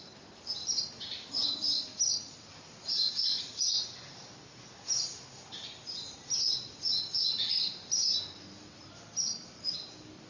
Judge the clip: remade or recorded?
remade